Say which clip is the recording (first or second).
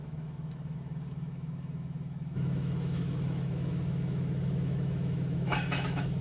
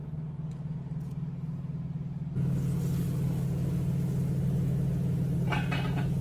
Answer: second